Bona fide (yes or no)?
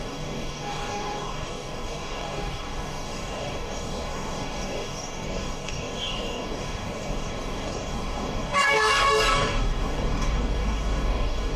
no